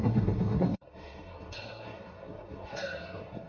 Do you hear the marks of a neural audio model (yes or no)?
yes